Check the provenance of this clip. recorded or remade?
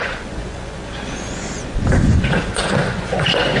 remade